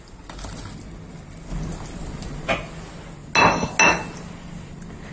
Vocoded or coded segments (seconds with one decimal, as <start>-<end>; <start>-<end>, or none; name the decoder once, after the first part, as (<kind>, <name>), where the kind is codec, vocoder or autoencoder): none